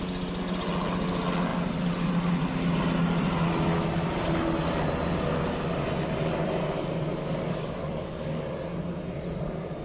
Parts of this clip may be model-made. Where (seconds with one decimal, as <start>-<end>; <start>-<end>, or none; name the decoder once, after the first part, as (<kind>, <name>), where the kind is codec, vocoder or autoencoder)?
7.2-8.4 (codec, DAC)